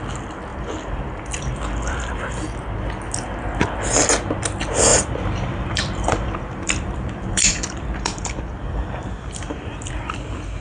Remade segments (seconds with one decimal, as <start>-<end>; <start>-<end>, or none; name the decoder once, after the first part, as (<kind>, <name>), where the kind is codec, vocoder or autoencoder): 0.5-2.1 (vocoder, BigVGAN v2); 4.9-9.9